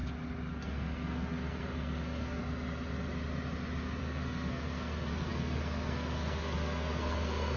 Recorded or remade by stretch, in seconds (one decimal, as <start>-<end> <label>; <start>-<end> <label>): 0.0-0.5 recorded; 0.5-2.4 remade; 2.4-4.0 recorded; 4.0-7.6 remade